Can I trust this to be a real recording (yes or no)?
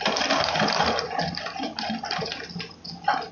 yes